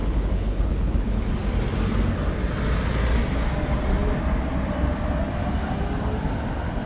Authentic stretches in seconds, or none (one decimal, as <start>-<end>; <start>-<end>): 1.3-6.9